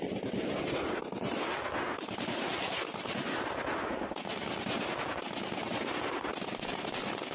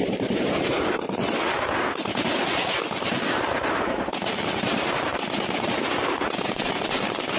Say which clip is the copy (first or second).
second